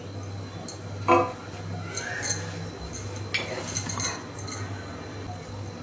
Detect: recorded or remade recorded